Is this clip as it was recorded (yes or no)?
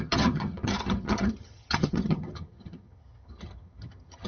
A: no